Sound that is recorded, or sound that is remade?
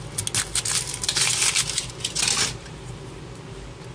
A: recorded